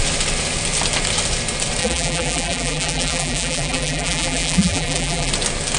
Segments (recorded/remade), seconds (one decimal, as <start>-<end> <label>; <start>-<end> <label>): 0.0-1.8 recorded; 1.8-5.3 remade; 5.3-5.8 recorded